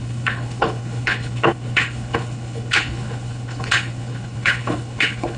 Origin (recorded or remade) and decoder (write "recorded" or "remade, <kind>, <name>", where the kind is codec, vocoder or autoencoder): remade, codec, HILCodec